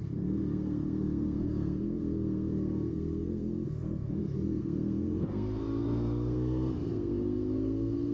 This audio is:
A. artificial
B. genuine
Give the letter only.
A